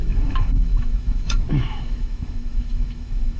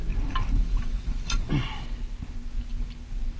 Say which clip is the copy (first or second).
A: first